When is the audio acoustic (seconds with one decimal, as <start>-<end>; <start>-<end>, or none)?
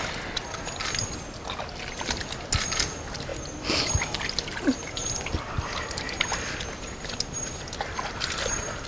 0.0-8.9